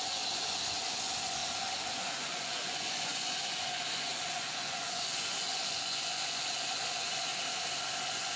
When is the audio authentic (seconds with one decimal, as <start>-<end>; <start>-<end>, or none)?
7.3-8.0